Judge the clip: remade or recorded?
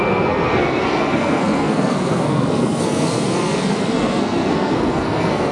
remade